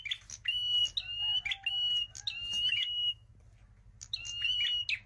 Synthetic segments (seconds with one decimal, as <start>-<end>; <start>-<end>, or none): 2.4-3.3